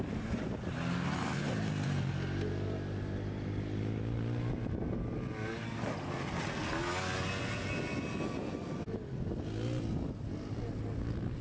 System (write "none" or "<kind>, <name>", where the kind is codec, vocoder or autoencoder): none